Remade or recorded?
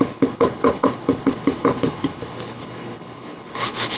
remade